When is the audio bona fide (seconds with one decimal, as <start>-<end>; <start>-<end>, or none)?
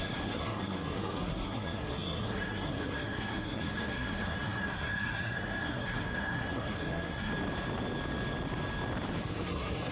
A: 7.3-9.2